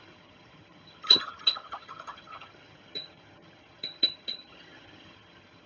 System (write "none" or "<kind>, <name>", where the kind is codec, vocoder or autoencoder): vocoder, HiFi-GAN